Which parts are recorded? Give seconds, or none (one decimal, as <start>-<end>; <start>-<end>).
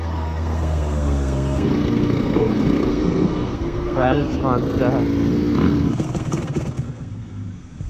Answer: 4.4-5.3